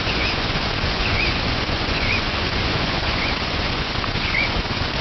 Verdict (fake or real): fake